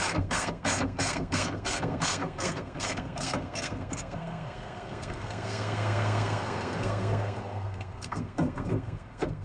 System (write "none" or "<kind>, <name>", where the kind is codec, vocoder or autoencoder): codec, SNAC